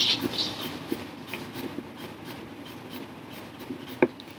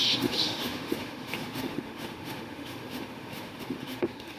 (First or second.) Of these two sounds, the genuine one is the first